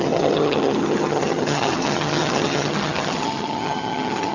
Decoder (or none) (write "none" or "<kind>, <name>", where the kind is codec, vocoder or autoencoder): vocoder, HiFi-GAN